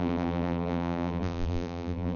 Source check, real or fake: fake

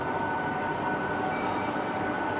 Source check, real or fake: fake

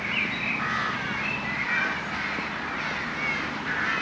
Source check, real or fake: real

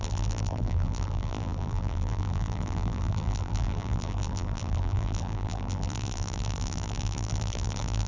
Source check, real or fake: fake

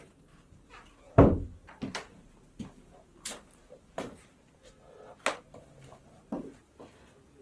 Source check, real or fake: fake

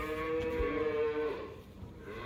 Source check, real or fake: fake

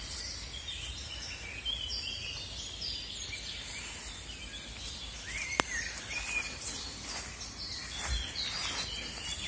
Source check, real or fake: real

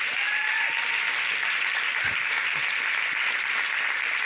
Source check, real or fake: real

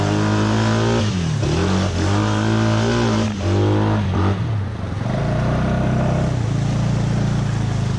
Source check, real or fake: real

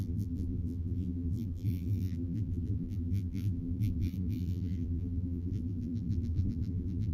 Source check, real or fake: fake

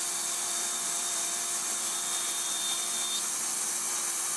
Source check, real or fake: fake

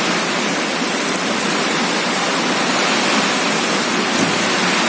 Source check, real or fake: fake